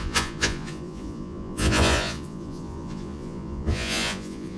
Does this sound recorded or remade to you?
remade